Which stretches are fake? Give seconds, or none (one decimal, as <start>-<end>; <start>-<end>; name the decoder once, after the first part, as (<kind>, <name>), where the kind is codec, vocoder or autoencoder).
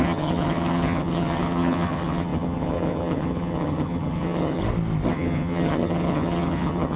0.0-4.6 (vocoder, HiFi-GAN); 5.1-7.0